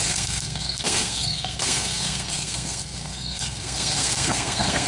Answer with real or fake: fake